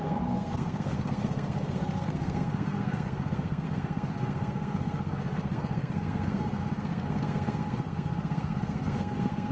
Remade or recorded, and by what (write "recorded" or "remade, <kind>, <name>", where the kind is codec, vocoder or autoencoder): remade, codec, SNAC